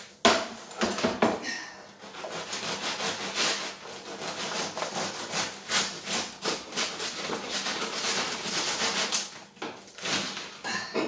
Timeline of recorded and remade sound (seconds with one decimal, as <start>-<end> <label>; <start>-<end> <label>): 0.0-11.1 recorded